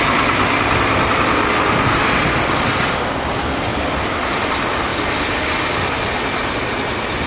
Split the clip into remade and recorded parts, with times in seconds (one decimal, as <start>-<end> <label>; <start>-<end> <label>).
0.0-3.7 recorded; 3.7-4.4 remade; 4.4-4.9 recorded; 4.9-5.9 remade; 5.9-7.3 recorded